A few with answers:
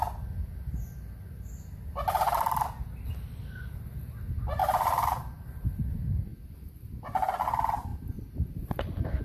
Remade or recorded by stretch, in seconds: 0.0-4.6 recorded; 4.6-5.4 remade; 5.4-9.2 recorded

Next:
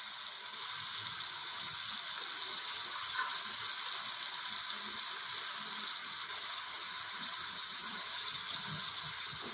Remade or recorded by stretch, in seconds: 0.0-1.1 recorded; 1.1-1.8 remade; 1.8-2.5 recorded; 2.5-3.2 remade; 3.2-6.0 recorded; 6.0-9.5 remade

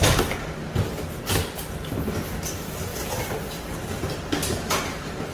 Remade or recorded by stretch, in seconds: 0.0-5.3 recorded